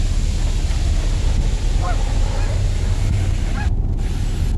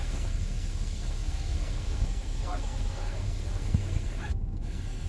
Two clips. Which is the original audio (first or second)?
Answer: first